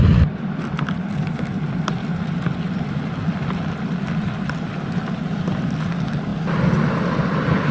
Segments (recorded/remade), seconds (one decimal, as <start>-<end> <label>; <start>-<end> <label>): 0.0-7.7 recorded